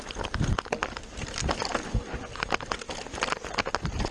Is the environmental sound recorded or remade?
recorded